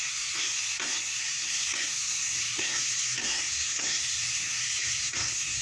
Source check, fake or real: fake